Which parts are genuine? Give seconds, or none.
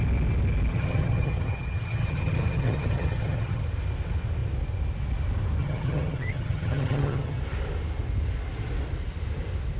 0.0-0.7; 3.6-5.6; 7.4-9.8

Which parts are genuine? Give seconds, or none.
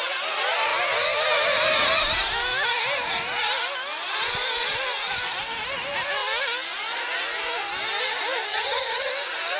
0.0-8.5; 9.1-9.6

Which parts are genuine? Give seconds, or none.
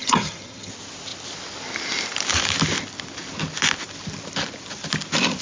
0.7-5.4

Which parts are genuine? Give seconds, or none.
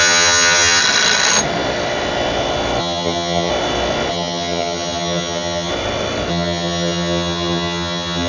0.8-2.8; 3.5-4.1; 5.7-6.3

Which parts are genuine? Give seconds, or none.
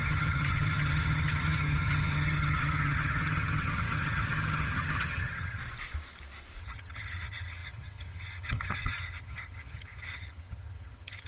5.6-6.6